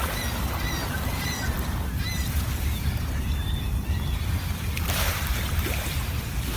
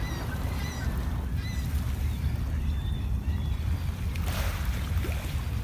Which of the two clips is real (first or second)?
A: second